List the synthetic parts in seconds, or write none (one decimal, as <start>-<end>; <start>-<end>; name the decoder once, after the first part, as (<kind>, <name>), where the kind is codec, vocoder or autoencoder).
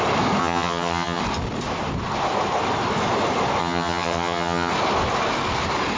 0.4-1.2 (vocoder, HiFi-GAN); 3.6-4.7